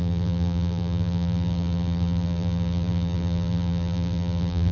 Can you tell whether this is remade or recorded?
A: remade